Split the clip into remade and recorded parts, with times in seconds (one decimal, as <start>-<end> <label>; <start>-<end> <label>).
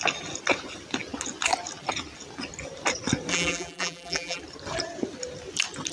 0.0-3.3 recorded; 3.3-4.4 remade; 4.4-5.9 recorded